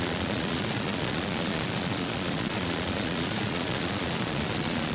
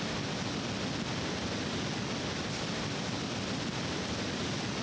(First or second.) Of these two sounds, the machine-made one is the first